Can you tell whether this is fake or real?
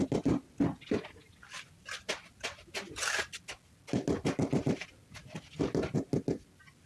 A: real